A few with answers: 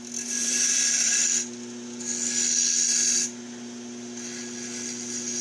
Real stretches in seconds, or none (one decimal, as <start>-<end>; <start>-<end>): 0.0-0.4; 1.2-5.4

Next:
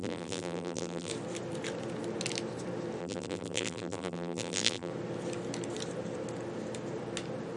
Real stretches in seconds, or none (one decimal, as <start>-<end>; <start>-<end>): 1.1-3.0; 4.9-7.6

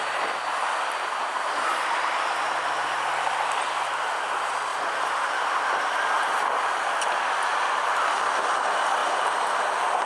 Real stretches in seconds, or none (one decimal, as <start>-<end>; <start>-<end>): 9.0-9.7